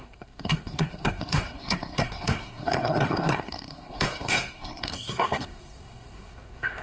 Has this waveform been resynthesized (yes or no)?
yes